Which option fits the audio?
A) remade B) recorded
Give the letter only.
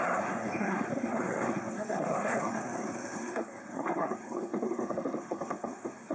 A